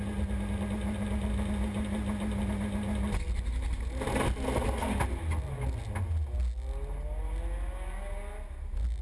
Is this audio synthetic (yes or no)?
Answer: no